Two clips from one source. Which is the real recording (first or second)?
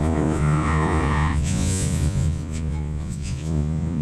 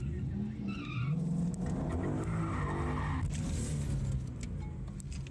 second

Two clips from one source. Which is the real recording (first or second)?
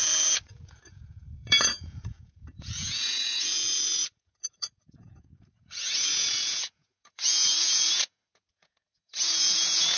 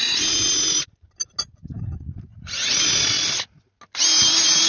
second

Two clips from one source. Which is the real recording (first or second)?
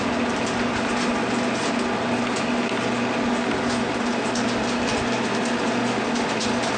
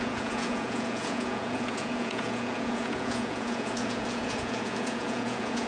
first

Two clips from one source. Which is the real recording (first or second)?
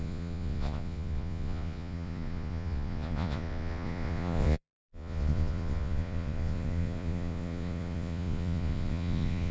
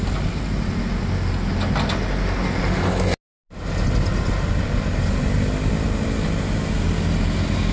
second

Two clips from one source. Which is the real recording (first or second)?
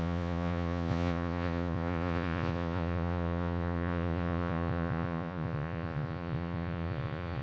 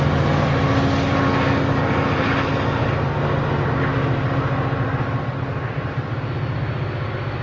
second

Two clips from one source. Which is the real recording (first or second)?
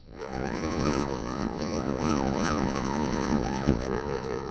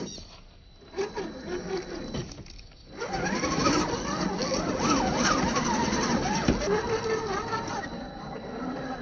second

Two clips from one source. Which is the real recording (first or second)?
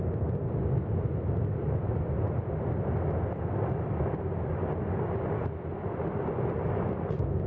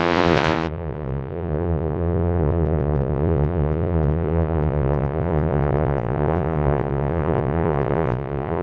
first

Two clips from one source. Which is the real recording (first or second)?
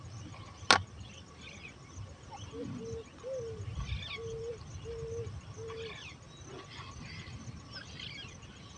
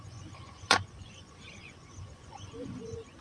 first